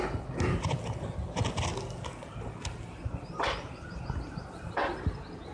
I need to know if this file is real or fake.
real